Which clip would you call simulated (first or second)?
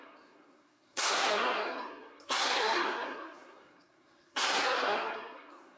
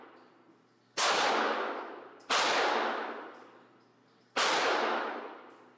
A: first